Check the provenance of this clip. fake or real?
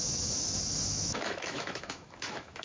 fake